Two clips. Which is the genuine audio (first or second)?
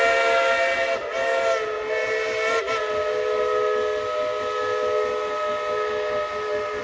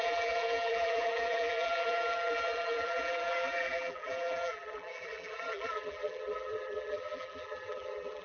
first